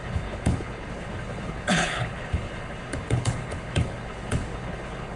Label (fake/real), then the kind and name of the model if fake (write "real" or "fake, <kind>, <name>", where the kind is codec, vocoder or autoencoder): fake, codec, HILCodec